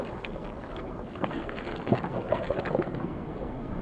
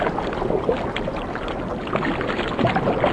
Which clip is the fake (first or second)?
first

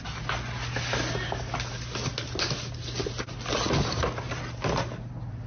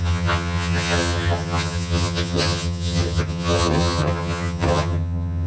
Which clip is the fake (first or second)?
second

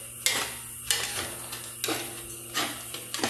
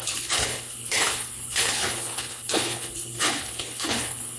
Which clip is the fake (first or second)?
second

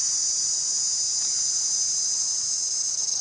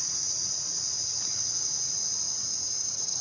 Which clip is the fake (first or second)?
second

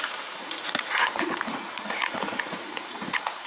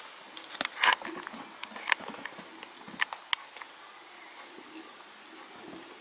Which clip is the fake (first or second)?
first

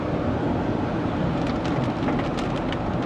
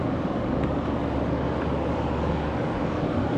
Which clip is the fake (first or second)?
second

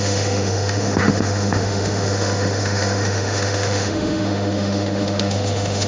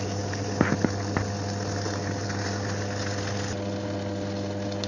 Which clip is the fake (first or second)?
first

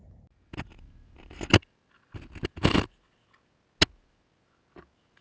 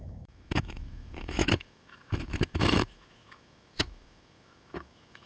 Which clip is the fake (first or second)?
second